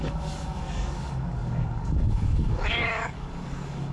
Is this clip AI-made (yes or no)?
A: yes